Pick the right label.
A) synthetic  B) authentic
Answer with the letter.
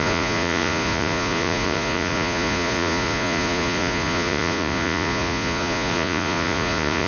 A